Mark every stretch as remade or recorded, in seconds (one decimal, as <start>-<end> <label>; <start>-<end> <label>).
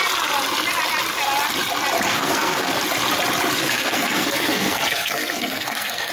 0.0-2.1 recorded; 2.1-2.8 remade; 2.8-3.6 recorded; 3.6-6.1 remade